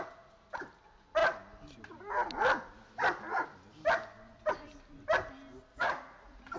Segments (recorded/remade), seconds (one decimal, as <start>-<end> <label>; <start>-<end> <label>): 0.0-5.7 recorded; 5.7-6.6 remade